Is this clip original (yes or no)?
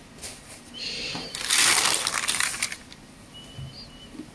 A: yes